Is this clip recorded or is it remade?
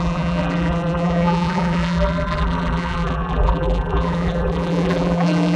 remade